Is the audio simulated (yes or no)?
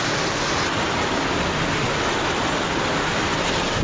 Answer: no